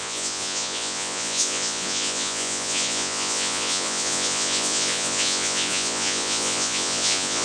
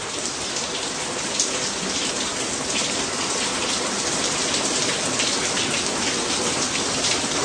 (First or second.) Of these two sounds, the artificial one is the first